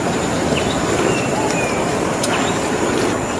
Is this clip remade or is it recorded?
recorded